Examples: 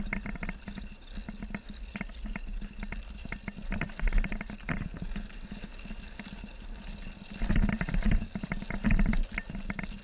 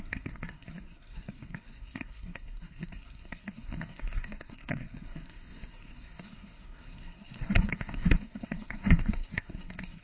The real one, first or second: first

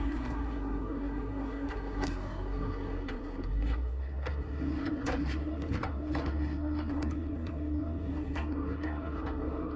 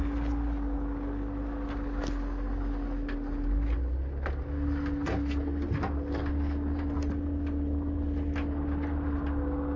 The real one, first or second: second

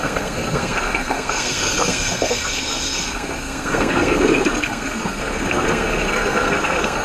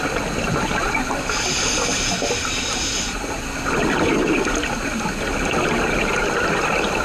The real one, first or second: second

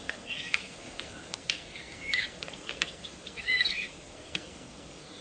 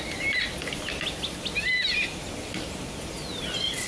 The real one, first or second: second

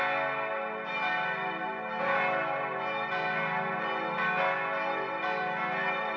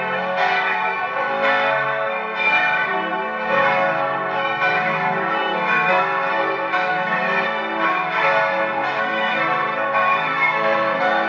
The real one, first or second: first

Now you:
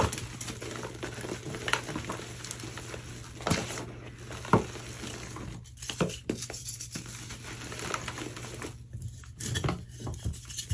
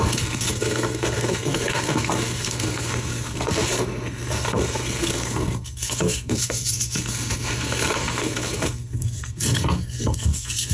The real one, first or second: first